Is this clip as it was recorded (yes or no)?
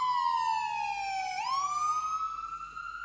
yes